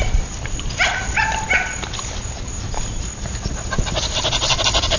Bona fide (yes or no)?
yes